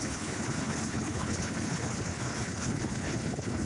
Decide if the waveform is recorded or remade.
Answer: remade